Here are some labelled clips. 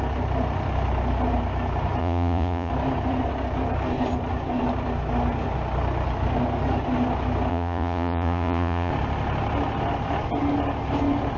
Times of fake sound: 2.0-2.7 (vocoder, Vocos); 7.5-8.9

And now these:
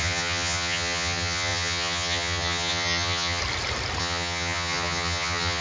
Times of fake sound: 0.0-3.4 (vocoder, HiFi-GAN); 4.0-5.6

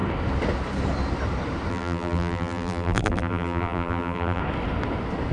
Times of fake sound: 1.7-4.4 (vocoder, BigVGAN v2)

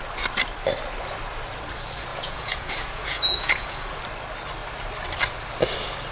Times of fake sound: 2.1-4.0 (vocoder, Vocos)